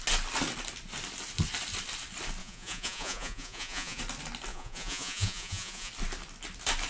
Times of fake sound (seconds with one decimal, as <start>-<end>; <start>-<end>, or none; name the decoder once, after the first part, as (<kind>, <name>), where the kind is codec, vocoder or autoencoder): 2.4-4.0 (vocoder, Vocos); 4.5-5.9